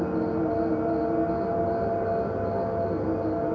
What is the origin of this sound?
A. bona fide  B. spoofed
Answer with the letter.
A